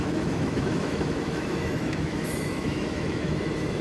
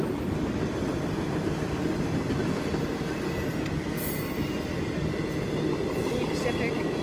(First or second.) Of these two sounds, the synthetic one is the first